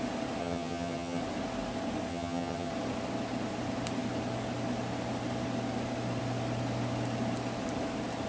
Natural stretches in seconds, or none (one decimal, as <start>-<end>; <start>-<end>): 0.0-0.4; 1.2-2.1; 2.7-8.3